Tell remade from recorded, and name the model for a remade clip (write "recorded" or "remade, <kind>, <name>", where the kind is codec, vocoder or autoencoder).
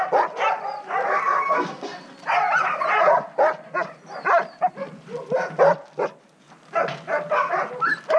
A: recorded